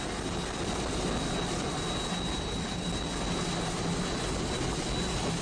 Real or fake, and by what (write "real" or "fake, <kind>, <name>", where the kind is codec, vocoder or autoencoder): real